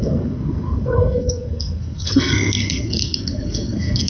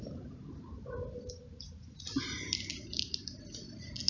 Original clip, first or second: second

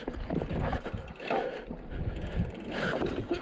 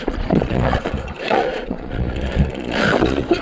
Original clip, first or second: first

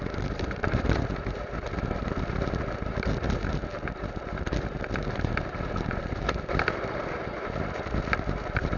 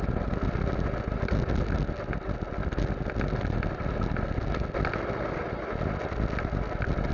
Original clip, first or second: second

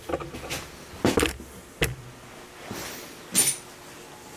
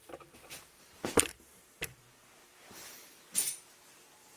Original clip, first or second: first